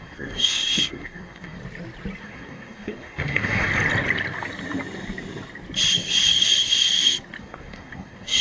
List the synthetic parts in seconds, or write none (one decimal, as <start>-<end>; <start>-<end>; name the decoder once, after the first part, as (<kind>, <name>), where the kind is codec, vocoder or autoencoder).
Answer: 0.0-1.6 (codec, SNAC); 2.2-3.7; 7.4-8.4